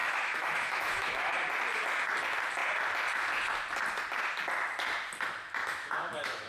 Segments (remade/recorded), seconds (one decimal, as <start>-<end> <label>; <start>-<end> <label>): 0.0-1.3 remade; 1.3-5.6 recorded; 5.6-6.5 remade